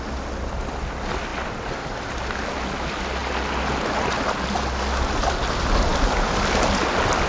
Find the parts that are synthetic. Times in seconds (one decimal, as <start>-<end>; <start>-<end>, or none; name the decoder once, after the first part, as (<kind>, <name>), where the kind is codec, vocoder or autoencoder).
1.3-2.0 (vocoder, BigVGAN v2)